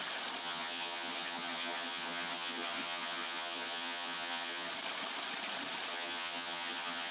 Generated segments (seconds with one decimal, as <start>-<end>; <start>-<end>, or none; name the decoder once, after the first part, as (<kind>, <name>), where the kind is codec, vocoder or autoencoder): 0.4-4.7 (vocoder, HiFi-GAN); 5.9-7.1